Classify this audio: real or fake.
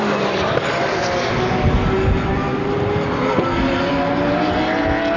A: real